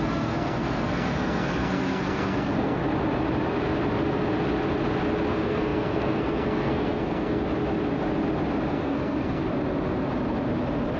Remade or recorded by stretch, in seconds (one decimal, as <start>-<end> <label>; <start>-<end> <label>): 0.0-2.8 remade; 2.8-5.3 recorded; 5.3-7.4 remade; 7.4-8.7 recorded; 8.7-9.5 remade; 9.5-11.0 recorded